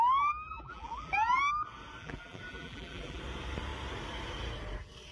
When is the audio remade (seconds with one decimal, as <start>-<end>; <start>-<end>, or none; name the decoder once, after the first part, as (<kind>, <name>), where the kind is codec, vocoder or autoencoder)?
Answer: 0.5-1.4 (vocoder, BigVGAN v2); 2.0-3.2